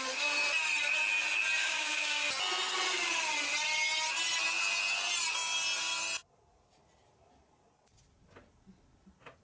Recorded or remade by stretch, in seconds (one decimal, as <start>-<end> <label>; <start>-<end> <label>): 0.0-1.6 recorded; 1.6-2.3 remade; 2.3-9.4 recorded